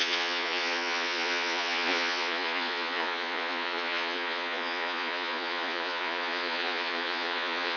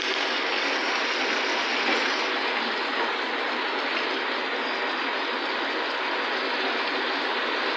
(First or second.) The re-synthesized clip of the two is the first